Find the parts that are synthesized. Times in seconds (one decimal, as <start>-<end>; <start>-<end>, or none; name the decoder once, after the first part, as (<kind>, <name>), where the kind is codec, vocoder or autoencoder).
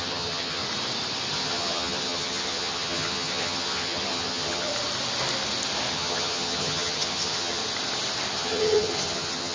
0.0-0.6 (vocoder, HiFi-GAN); 1.3-4.7; 5.9-7.6; 8.3-9.5